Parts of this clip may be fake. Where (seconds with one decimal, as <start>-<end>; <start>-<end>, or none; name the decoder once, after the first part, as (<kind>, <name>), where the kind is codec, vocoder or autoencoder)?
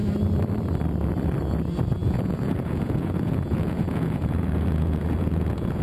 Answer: 2.0-5.8 (vocoder, Vocos)